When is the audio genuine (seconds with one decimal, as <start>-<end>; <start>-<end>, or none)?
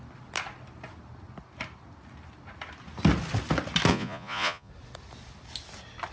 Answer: 0.0-3.9; 4.7-6.1